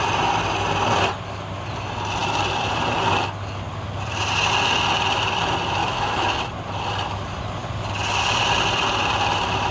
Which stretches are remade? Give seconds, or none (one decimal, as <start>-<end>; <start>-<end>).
5.8-6.5